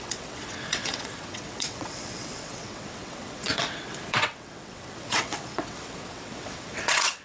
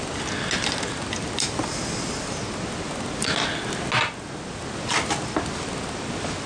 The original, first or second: second